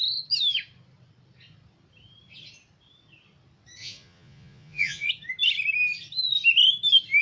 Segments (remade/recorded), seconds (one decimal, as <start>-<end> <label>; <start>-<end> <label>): 0.0-3.8 recorded; 3.8-5.1 remade; 5.1-7.2 recorded